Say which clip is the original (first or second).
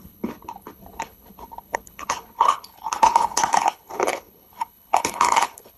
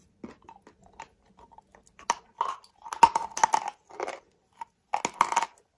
second